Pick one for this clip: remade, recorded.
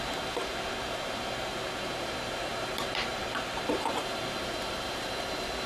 remade